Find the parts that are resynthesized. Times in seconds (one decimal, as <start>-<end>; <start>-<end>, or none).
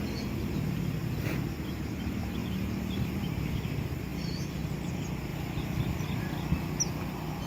2.4-3.5